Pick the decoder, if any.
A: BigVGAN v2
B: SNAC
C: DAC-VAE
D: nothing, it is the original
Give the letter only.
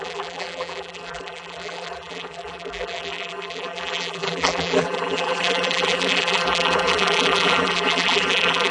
A